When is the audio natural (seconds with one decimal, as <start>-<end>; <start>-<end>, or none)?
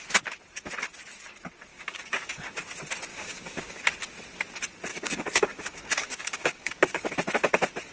0.0-1.7; 2.6-3.1; 3.8-4.9; 7.1-7.9